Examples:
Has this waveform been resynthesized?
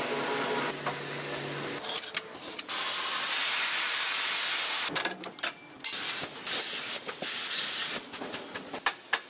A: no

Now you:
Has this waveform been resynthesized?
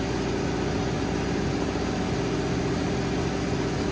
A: no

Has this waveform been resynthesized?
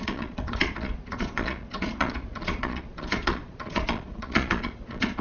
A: yes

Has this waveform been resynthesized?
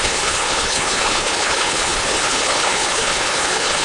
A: yes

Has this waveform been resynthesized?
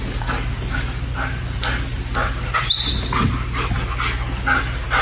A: no